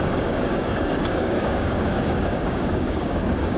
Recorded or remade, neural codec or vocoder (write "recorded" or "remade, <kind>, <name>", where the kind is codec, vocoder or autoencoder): remade, codec, DAC